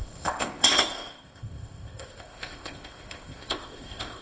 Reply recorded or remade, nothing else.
remade